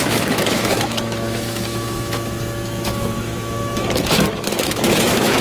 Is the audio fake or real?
fake